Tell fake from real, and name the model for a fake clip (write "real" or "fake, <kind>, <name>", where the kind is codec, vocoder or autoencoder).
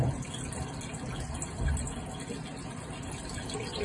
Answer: real